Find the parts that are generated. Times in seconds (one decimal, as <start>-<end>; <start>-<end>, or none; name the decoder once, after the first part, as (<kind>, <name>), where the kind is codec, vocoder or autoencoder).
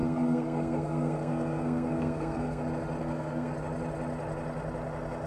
0.0-2.6 (codec, SNAC); 3.0-3.5